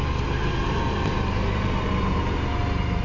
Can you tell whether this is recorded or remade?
recorded